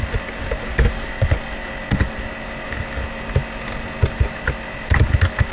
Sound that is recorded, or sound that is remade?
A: recorded